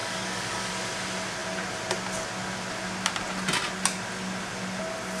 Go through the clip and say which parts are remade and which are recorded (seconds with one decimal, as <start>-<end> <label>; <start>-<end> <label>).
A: 0.0-0.7 remade; 0.7-5.2 recorded